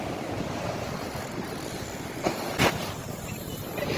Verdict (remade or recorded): recorded